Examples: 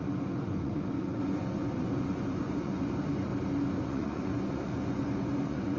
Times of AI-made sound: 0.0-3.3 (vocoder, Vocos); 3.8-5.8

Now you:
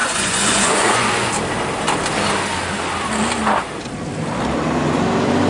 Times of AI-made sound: 0.0-1.3 (vocoder, Vocos)